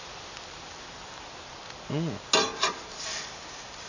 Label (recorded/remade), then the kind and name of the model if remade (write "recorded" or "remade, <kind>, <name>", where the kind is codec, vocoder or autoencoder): recorded